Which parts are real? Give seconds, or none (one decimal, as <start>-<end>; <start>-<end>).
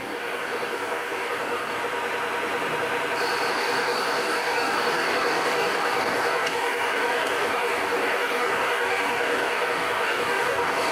1.8-3.5